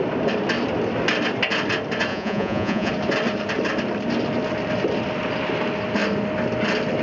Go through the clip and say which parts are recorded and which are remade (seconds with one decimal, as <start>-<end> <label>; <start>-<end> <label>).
0.0-2.1 recorded; 2.1-2.9 remade; 2.9-7.0 recorded